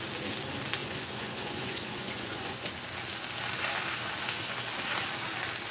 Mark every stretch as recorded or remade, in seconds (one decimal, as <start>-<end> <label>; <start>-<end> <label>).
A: 0.0-0.8 recorded; 0.8-2.7 remade; 2.7-5.7 recorded